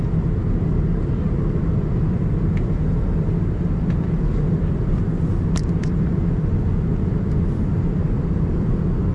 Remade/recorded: remade